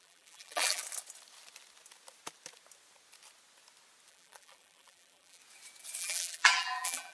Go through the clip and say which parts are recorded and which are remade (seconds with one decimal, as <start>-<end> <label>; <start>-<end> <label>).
0.0-0.8 remade; 0.8-4.1 recorded; 4.1-5.4 remade; 5.4-6.0 recorded; 6.0-7.1 remade